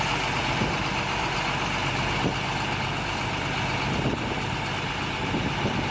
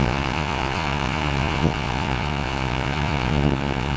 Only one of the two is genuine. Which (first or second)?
first